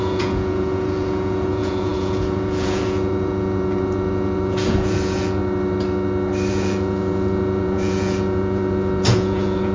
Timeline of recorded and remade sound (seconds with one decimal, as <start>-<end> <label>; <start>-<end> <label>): 0.0-5.4 remade; 5.4-6.5 recorded; 6.5-9.7 remade